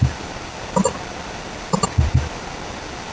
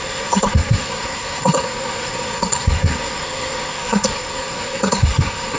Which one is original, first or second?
first